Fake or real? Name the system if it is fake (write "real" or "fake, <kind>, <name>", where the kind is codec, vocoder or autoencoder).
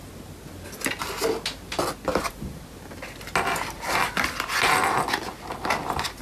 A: real